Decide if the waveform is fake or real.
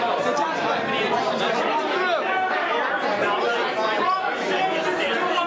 real